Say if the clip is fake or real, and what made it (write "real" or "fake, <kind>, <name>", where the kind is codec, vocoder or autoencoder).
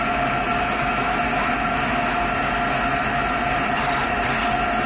real